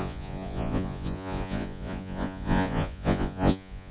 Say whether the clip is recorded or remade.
remade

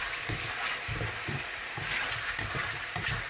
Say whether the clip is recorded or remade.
recorded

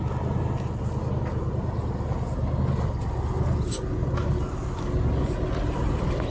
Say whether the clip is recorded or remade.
recorded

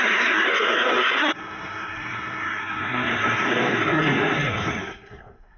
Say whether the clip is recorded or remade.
remade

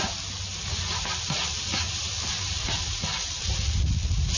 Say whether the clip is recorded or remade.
recorded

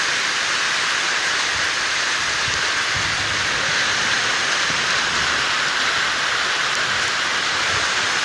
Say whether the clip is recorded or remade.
remade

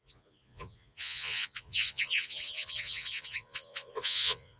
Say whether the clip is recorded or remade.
remade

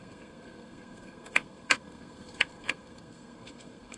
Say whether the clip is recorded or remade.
remade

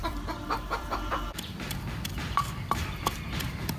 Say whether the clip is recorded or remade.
remade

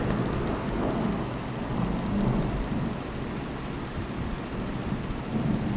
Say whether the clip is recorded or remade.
recorded